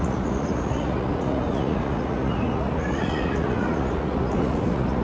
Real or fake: fake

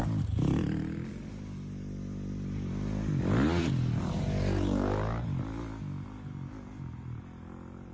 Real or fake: real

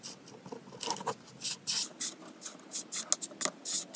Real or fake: real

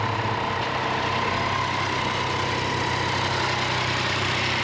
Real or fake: real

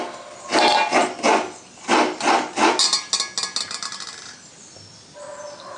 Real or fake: real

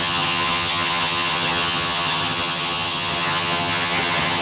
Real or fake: fake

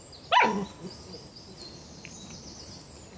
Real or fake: real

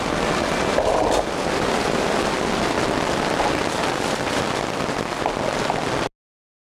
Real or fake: real